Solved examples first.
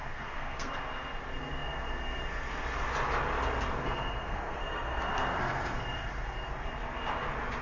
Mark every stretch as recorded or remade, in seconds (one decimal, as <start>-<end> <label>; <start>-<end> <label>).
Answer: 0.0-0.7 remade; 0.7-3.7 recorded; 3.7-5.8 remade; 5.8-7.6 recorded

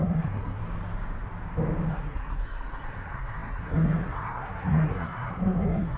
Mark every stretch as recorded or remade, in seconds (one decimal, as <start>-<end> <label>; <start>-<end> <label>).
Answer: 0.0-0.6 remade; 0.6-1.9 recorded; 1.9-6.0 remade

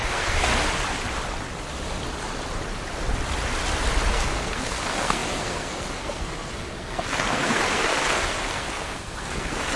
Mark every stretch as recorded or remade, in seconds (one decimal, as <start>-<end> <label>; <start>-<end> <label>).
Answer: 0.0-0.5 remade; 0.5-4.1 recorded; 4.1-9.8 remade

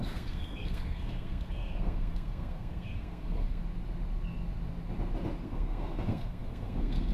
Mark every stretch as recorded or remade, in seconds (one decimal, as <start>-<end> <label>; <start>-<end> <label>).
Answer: 0.0-3.6 remade; 3.6-5.4 recorded; 5.4-7.1 remade